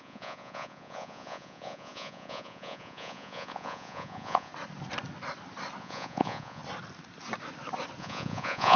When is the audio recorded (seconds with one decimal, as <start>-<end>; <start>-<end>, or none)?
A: 4.5-5.8; 6.6-8.0

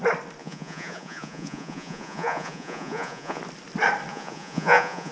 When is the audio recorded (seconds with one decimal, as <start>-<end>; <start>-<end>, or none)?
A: 0.0-0.4; 3.4-4.1

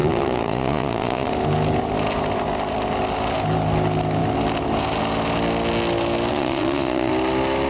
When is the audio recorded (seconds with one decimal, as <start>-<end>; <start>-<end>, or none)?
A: 1.3-6.3; 7.1-7.7

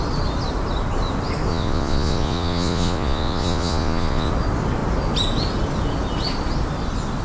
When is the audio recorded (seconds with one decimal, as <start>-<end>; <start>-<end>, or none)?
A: 0.0-1.5; 4.3-7.2